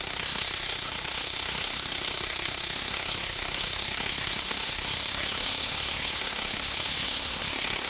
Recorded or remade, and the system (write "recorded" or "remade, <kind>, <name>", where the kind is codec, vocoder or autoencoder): remade, codec, SNAC